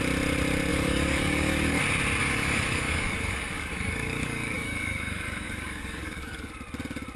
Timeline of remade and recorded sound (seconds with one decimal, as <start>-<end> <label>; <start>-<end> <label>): 0.0-0.7 recorded; 0.7-1.8 remade; 1.8-2.2 recorded; 2.2-6.5 remade; 6.5-7.2 recorded